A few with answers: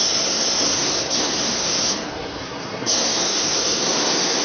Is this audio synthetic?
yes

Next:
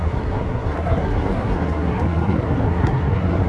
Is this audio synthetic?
yes